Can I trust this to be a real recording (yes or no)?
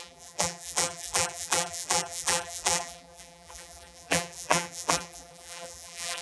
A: no